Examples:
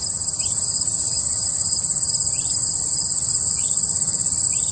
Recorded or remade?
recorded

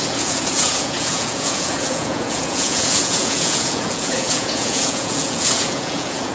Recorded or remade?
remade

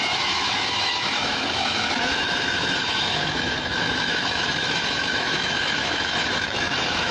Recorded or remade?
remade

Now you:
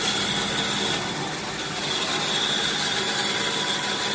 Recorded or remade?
recorded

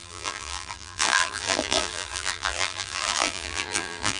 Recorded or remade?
remade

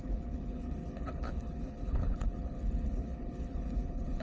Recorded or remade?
remade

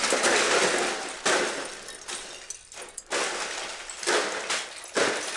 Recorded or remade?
recorded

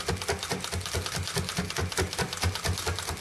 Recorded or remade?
recorded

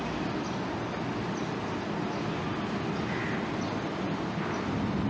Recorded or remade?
recorded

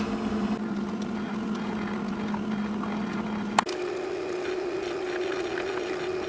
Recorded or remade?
recorded